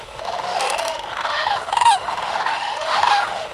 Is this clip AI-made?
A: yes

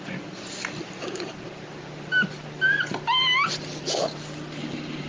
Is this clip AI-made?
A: no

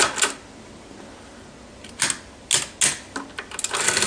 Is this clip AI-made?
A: no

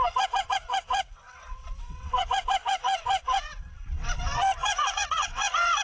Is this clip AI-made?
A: yes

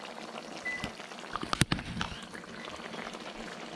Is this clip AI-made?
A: no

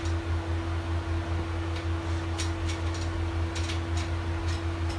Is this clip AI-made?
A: no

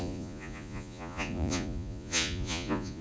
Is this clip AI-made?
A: yes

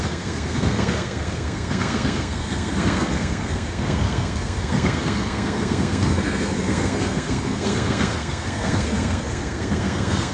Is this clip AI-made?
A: yes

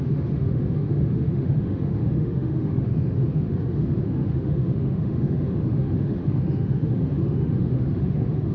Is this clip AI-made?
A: yes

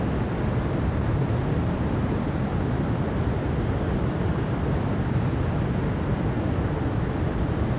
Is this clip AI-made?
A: no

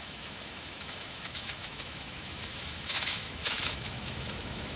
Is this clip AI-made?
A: yes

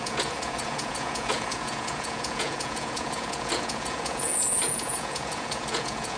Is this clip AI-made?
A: yes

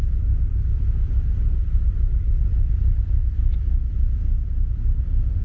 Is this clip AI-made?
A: no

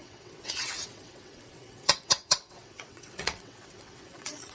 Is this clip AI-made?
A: yes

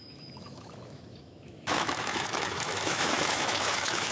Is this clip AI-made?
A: yes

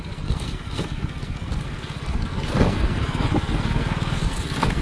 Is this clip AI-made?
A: yes